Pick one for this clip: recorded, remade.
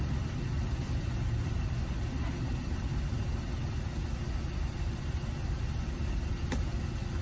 recorded